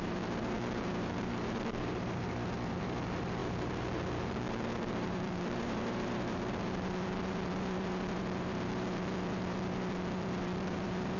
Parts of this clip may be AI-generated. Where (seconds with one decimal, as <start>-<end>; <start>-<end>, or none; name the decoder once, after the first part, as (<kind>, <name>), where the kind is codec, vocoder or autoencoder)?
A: 0.0-11.2 (vocoder, BigVGAN v2)